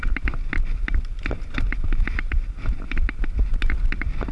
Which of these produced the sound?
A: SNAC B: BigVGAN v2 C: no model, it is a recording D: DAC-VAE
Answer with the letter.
C